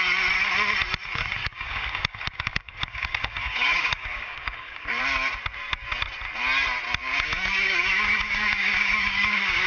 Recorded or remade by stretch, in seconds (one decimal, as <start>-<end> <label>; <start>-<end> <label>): 0.0-1.4 recorded; 1.4-5.0 remade; 5.0-7.0 recorded; 7.0-9.7 remade